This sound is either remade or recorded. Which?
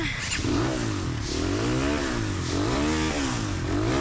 recorded